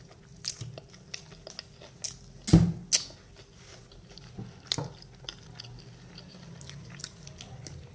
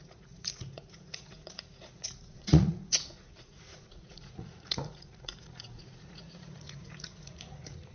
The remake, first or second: second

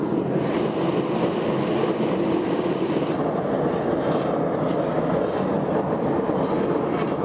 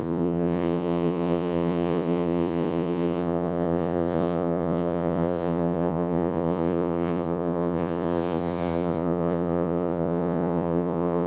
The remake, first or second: second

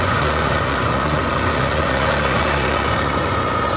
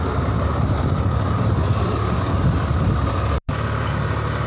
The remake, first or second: first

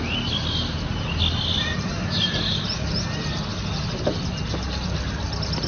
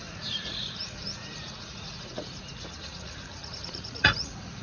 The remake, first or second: second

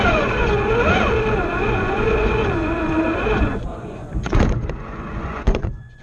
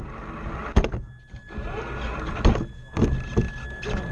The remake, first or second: first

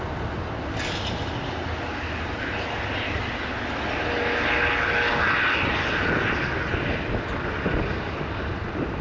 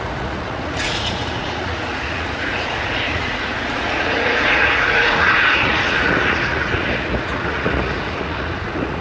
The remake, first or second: second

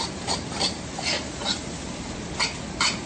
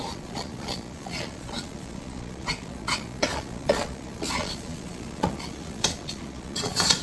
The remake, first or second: second